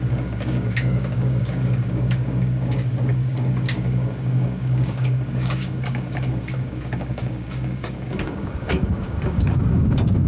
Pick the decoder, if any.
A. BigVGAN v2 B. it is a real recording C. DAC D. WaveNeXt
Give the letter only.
C